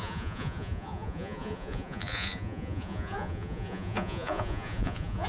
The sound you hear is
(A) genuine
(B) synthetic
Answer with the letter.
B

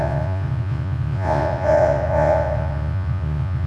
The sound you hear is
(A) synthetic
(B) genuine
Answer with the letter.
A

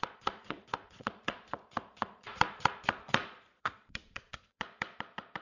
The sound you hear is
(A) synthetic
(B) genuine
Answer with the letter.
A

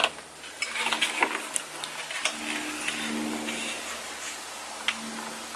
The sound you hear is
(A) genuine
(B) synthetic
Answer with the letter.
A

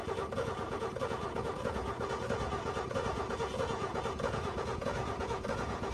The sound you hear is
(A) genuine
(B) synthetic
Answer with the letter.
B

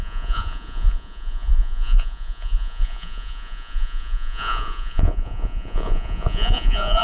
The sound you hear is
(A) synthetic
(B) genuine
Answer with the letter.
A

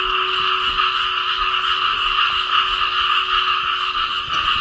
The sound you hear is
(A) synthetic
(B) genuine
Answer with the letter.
B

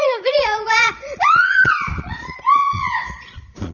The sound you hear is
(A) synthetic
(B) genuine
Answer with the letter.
A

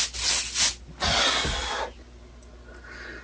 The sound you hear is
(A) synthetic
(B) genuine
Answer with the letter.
B